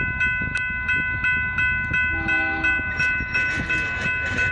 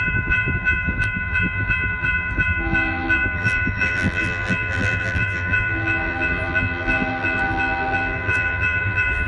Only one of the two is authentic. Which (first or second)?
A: first